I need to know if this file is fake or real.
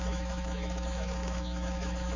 fake